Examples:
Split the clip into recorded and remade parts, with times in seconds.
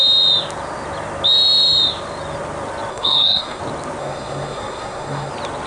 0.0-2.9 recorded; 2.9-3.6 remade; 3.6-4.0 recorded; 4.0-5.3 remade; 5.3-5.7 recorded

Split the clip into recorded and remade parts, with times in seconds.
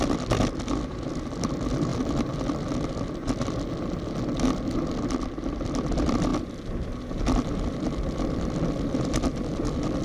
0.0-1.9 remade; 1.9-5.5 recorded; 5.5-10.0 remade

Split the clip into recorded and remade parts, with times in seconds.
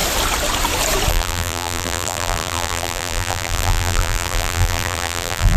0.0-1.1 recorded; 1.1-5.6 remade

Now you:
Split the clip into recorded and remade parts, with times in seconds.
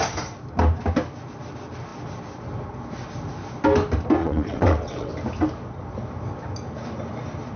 0.0-4.2 recorded; 4.2-5.1 remade; 5.1-7.6 recorded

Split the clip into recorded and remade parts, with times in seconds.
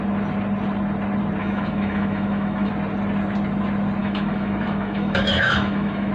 0.0-1.4 recorded; 1.4-2.7 remade; 2.7-4.0 recorded; 4.0-6.1 remade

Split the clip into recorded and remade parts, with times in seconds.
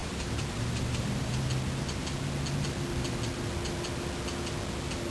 0.0-1.4 remade; 1.4-5.1 recorded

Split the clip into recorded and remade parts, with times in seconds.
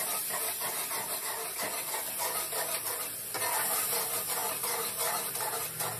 0.0-6.0 recorded